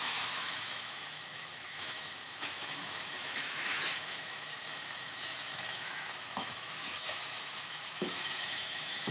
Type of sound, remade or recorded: remade